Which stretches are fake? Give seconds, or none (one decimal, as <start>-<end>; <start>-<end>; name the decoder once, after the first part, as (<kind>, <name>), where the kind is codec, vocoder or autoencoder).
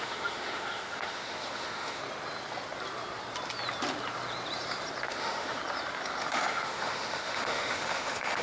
0.0-2.0 (autoencoder, DAC-VAE); 5.1-5.6; 6.2-8.4